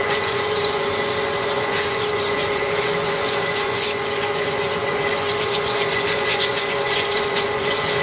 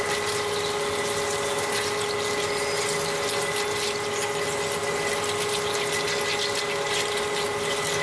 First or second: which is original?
second